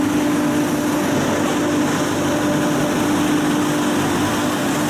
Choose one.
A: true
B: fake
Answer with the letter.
A